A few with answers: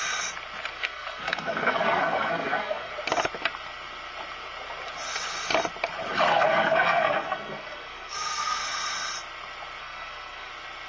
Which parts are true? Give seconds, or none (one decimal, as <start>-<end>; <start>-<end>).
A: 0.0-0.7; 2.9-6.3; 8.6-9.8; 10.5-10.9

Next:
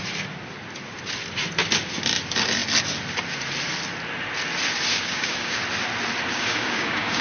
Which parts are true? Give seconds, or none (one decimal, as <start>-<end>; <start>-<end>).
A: 0.0-4.9; 5.6-6.3

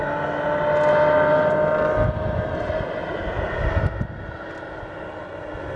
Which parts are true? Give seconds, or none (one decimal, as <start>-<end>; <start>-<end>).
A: 0.0-5.8